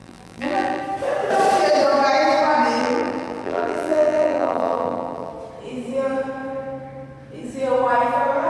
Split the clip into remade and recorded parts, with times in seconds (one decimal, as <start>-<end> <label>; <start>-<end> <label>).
0.0-0.8 remade; 0.8-2.8 recorded; 2.8-5.3 remade; 5.3-8.5 recorded

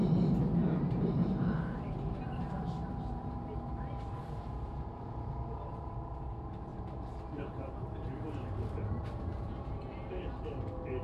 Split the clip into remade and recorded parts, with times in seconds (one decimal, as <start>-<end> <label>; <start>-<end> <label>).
0.0-0.6 recorded; 0.6-4.8 remade; 4.8-6.7 recorded; 6.7-9.5 remade; 9.5-11.0 recorded